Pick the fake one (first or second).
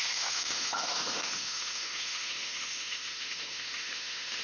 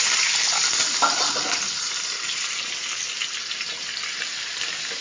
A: first